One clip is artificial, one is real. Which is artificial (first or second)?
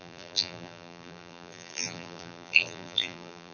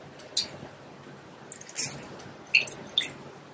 first